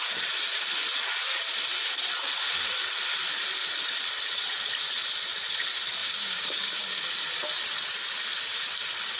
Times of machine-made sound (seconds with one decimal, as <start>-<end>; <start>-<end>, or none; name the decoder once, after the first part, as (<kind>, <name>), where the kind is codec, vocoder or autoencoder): 6.0-7.1 (codec, DAC)